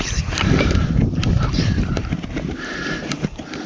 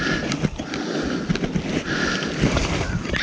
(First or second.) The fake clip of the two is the first